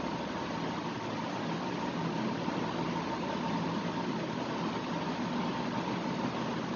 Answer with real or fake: real